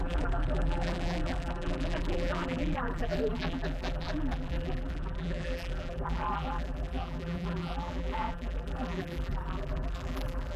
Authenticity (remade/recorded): remade